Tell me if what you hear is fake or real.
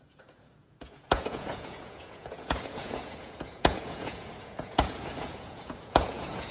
fake